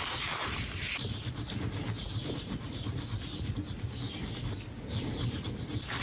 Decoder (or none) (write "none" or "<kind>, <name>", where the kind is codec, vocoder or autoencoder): none